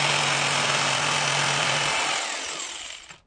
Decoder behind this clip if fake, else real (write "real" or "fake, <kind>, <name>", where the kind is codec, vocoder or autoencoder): real